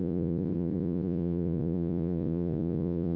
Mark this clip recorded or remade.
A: remade